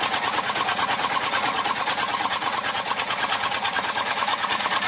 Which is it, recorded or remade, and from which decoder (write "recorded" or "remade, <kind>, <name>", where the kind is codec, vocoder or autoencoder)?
remade, vocoder, Vocos